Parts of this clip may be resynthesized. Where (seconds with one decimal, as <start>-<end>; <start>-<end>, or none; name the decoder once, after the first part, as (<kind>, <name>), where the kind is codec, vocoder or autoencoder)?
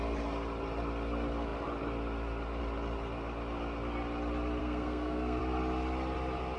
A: 4.6-5.4 (codec, SNAC)